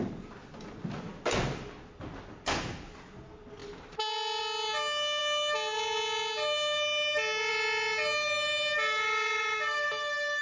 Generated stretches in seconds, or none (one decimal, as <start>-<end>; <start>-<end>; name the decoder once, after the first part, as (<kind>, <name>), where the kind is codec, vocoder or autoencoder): none